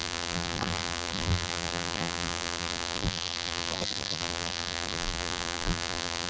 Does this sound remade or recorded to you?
remade